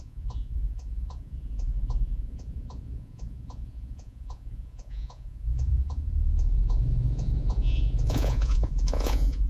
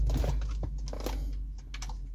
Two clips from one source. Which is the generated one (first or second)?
first